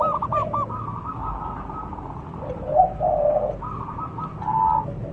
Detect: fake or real real